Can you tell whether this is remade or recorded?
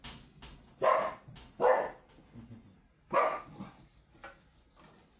recorded